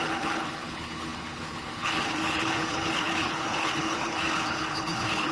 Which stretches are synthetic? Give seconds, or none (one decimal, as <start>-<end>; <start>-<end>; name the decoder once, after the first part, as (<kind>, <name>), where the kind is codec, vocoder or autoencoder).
0.0-5.3 (codec, HILCodec)